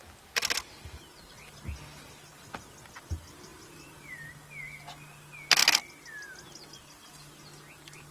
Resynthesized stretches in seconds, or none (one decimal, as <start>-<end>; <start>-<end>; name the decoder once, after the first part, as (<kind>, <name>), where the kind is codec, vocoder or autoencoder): 3.5-4.3 (vocoder, BigVGAN v2)